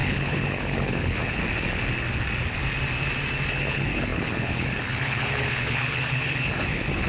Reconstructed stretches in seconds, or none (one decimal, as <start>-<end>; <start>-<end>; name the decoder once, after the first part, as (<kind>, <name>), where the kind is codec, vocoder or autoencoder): 0.0-1.4 (codec, HILCodec); 3.5-7.1